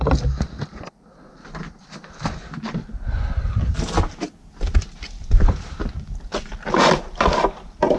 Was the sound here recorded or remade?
recorded